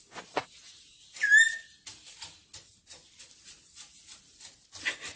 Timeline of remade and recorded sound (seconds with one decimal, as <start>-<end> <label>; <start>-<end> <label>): 0.0-5.2 recorded